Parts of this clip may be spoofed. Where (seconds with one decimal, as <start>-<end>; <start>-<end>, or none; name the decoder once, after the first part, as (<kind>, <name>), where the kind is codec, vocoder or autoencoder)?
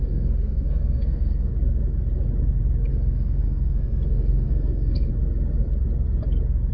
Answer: 0.0-1.5 (codec, SNAC); 2.9-5.1